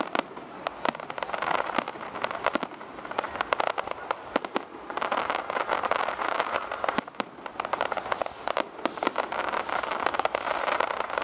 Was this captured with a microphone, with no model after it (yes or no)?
yes